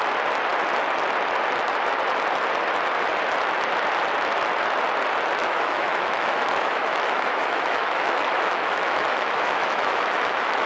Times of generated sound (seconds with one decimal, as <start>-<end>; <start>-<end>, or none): 5.4-10.7